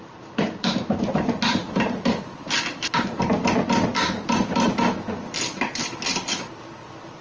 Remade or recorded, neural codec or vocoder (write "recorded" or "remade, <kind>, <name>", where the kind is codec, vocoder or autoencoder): recorded